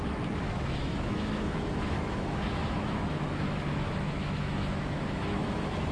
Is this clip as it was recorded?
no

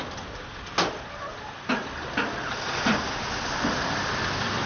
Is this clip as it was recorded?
yes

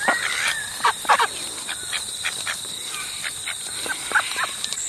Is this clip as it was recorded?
yes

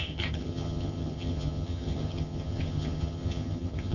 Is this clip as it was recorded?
no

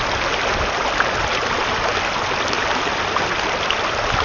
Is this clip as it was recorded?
yes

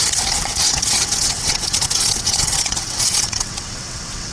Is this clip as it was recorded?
no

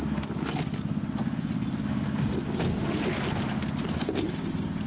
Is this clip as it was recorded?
yes